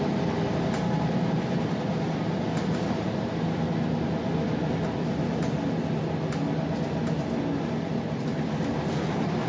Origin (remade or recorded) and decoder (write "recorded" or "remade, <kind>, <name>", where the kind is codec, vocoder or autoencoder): recorded